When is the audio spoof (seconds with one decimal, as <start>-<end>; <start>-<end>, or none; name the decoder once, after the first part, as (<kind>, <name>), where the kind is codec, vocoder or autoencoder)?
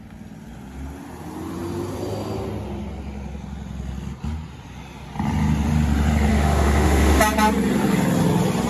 6.3-7.2 (autoencoder, DAC-VAE)